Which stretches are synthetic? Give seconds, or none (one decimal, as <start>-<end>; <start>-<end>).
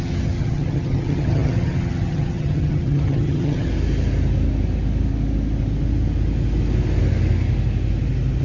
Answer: 0.0-3.7